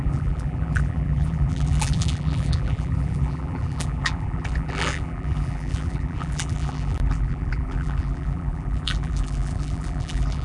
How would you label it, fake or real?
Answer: fake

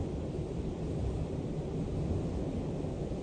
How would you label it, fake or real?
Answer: fake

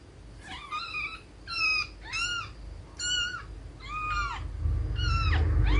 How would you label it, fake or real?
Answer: real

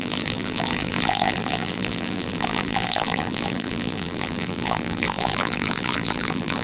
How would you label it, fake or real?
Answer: fake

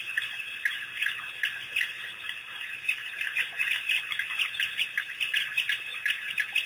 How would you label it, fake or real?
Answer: fake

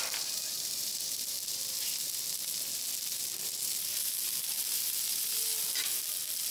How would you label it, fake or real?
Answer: fake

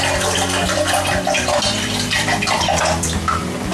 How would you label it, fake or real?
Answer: fake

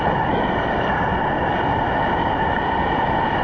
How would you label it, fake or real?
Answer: real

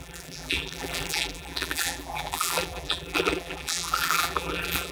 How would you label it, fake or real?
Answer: fake